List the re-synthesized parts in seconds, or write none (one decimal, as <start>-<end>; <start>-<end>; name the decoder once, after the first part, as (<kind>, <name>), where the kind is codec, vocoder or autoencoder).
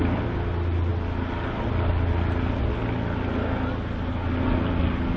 none